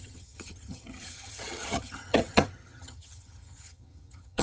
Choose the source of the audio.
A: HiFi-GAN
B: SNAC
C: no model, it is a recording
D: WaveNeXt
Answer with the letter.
A